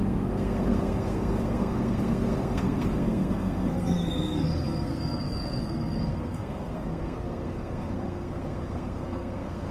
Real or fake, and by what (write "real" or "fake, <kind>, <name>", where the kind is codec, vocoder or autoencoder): fake, codec, SNAC